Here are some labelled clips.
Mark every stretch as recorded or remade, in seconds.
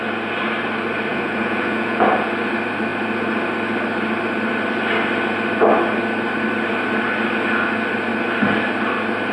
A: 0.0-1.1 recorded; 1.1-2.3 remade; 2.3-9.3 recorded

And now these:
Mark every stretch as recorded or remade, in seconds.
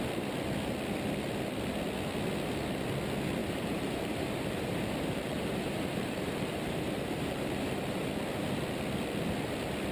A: 0.0-3.4 recorded; 3.4-8.1 remade; 8.1-9.9 recorded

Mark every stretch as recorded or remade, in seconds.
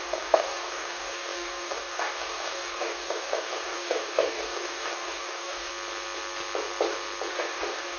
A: 0.0-5.7 remade; 5.7-7.3 recorded; 7.3-8.0 remade